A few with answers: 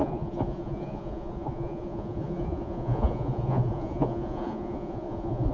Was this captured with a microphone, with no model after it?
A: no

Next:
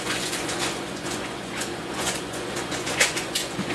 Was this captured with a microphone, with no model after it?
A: no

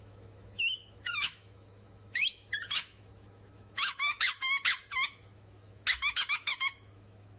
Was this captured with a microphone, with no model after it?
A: no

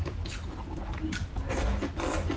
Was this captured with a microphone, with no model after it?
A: yes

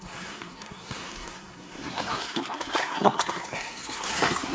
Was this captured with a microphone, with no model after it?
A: no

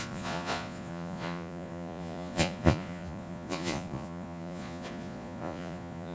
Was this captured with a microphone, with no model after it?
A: no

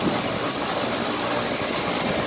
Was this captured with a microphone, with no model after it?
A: yes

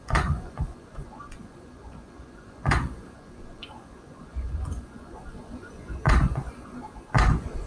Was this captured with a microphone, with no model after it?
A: no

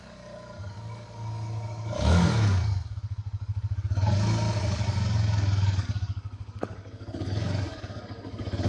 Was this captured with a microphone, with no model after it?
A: no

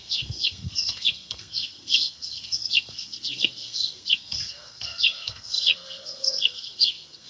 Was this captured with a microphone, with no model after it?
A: no